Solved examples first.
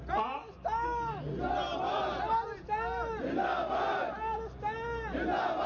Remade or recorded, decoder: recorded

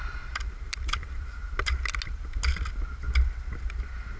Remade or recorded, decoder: recorded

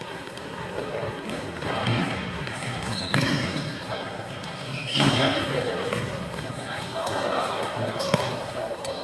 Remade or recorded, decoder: remade, codec, SNAC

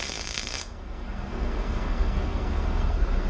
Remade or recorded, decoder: remade, codec, SNAC